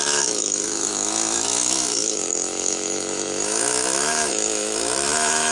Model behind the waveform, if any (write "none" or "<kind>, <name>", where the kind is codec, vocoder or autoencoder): autoencoder, DAC-VAE